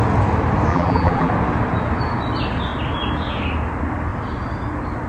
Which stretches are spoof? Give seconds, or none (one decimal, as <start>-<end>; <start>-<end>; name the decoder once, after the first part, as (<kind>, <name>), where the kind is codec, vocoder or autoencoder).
0.7-1.3 (vocoder, BigVGAN v2)